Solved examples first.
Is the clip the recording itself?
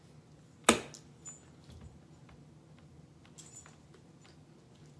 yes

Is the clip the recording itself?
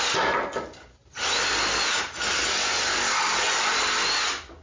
yes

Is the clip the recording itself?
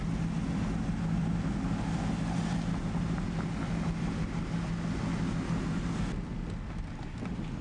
yes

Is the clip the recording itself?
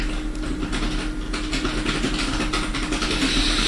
yes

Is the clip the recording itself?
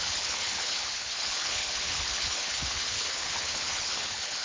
no